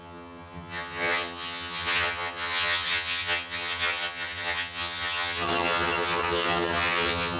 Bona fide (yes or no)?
no